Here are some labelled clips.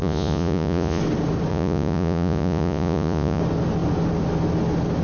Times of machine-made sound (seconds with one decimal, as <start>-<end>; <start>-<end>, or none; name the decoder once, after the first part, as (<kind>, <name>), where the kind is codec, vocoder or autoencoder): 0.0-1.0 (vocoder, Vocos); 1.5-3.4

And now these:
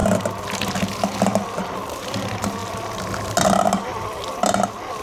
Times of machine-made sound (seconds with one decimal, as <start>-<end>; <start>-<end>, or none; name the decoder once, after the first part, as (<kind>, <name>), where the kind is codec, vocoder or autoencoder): none

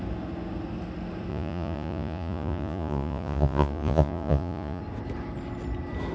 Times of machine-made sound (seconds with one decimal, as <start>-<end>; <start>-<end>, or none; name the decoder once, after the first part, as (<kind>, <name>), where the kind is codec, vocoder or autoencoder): 1.3-4.8 (vocoder, Vocos)